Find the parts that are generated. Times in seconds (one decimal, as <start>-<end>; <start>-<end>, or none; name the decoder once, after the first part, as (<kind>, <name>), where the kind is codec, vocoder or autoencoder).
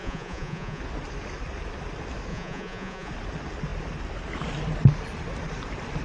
0.0-0.8 (vocoder, Vocos); 2.3-3.1